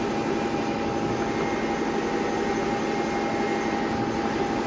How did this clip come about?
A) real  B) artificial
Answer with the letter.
A